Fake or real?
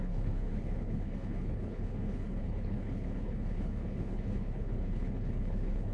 fake